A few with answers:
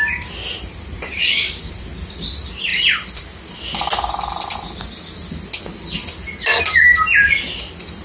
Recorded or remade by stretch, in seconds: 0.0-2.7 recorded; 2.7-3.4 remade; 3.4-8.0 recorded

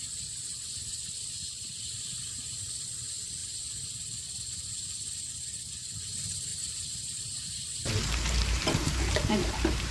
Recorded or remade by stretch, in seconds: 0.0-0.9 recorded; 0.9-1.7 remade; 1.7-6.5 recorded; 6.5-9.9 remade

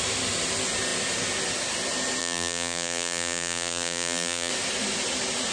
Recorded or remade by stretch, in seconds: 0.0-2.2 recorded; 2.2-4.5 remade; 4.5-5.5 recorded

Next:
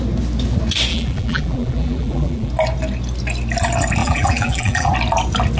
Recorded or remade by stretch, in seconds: 0.0-0.9 recorded; 0.9-2.5 remade; 2.5-4.0 recorded; 4.0-4.9 remade; 4.9-5.6 recorded